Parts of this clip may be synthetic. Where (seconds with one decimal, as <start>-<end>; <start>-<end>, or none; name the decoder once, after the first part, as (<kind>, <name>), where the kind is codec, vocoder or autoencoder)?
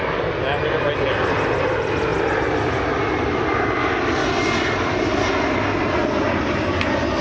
none